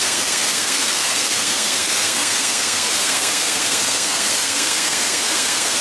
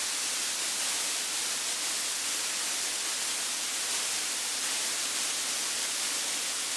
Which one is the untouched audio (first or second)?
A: second